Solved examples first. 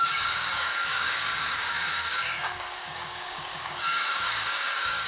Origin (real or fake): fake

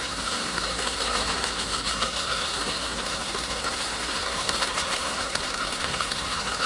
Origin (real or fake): fake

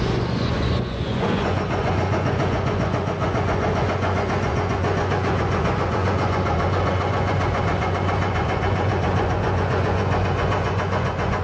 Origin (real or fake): fake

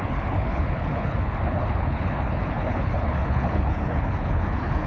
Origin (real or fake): fake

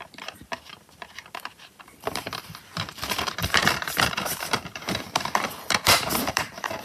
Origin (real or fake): fake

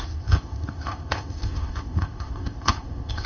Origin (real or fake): fake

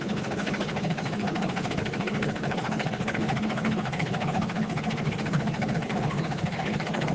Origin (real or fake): fake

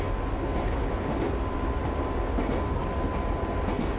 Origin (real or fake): real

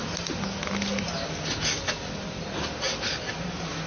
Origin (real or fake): real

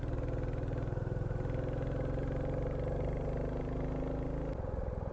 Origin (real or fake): real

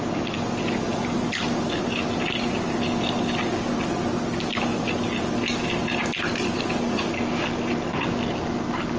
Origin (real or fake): real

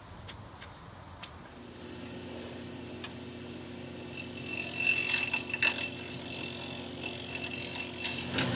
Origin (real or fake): real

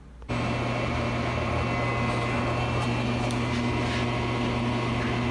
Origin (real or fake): real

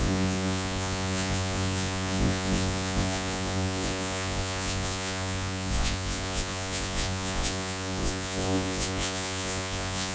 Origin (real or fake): fake